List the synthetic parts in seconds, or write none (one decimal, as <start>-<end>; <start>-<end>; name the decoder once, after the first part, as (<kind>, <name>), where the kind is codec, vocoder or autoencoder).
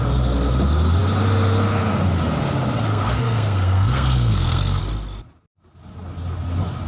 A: 2.9-4.8 (codec, SNAC)